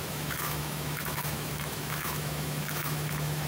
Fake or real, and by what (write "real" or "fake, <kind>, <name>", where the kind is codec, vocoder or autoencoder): fake, autoencoder, DAC-VAE